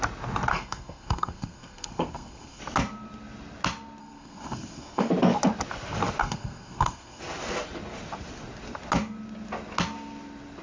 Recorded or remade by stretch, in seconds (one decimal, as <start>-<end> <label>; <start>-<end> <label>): 0.0-0.5 recorded; 0.5-2.6 remade; 2.6-4.0 recorded; 4.0-5.1 remade; 5.1-6.2 recorded; 6.2-7.2 remade; 7.2-10.6 recorded